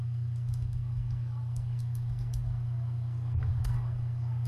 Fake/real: fake